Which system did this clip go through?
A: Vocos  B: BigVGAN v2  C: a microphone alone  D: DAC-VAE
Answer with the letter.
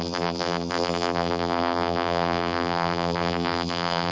B